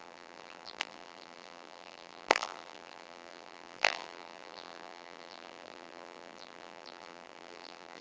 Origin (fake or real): fake